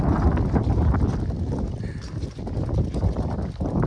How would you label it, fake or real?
real